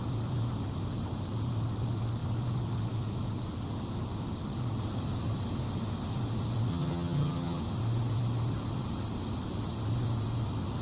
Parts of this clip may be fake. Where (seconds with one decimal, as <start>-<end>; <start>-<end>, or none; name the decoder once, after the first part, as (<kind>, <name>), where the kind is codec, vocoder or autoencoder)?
6.7-7.6 (vocoder, HiFi-GAN)